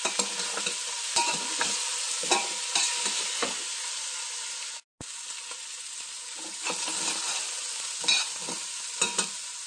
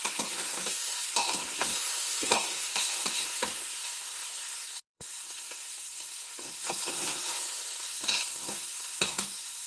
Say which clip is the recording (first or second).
first